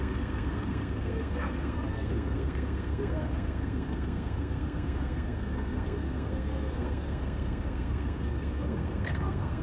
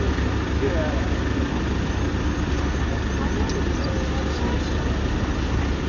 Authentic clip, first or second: second